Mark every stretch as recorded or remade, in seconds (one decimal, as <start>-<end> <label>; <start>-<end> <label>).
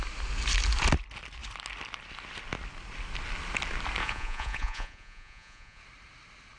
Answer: 0.0-4.0 recorded; 4.0-5.8 remade; 5.8-6.6 recorded